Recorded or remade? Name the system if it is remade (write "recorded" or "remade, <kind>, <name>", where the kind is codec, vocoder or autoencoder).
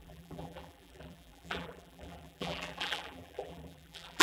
remade, vocoder, BigVGAN v2